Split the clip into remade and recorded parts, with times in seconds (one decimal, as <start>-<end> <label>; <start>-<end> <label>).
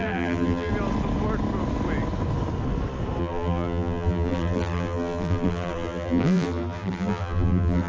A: 0.0-0.7 remade; 0.7-3.2 recorded; 3.2-7.9 remade